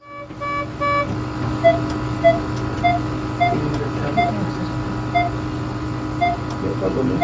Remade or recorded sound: recorded